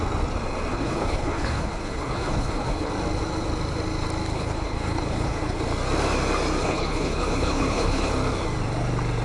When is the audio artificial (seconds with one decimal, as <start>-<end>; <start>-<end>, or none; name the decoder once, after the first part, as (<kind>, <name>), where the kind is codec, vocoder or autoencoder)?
0.7-2.9 (codec, HILCodec); 4.3-5.6; 6.6-8.1